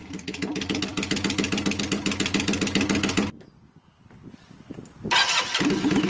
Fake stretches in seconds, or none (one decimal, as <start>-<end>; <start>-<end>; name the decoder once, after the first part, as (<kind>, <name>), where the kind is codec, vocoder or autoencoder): none